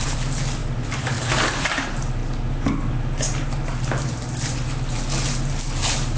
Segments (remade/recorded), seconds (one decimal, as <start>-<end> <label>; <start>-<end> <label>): 0.0-0.6 recorded; 0.6-1.7 remade; 1.7-6.2 recorded